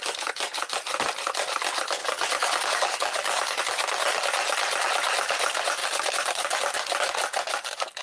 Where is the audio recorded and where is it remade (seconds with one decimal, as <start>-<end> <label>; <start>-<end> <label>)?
0.0-2.0 recorded; 2.0-3.6 remade; 3.6-8.0 recorded